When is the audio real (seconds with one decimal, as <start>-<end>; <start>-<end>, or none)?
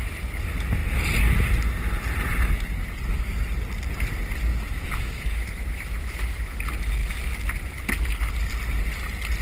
0.0-4.5; 6.6-9.4